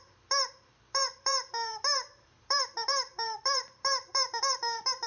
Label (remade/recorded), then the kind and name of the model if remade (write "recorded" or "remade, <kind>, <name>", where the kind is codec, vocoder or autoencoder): remade, vocoder, BigVGAN v2